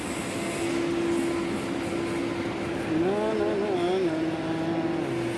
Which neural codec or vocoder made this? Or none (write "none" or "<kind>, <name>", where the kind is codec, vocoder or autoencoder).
none